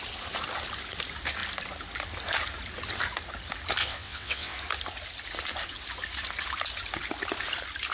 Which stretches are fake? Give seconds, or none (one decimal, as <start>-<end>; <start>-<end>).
3.8-4.6